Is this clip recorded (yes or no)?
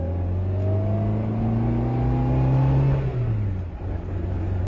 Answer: yes